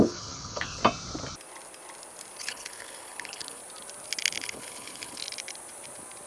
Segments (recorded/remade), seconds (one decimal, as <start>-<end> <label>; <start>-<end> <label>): 0.0-0.8 remade; 0.8-2.4 recorded; 2.4-3.6 remade; 3.6-4.4 recorded; 4.4-5.2 remade; 5.2-6.3 recorded